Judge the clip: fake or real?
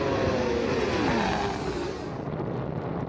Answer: real